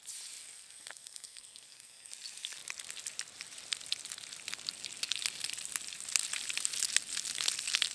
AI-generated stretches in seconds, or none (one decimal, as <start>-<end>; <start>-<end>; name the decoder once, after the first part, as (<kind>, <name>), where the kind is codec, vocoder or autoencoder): 0.4-2.1 (codec, SNAC)